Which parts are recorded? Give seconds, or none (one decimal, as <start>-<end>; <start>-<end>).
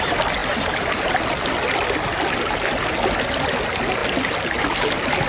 0.0-5.3